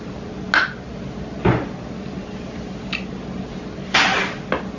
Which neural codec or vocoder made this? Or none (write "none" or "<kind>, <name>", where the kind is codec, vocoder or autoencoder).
none